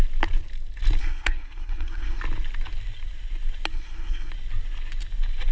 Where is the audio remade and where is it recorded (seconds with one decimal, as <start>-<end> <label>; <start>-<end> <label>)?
0.0-1.0 recorded; 1.0-2.2 remade; 2.2-3.7 recorded; 3.7-4.3 remade; 4.3-5.5 recorded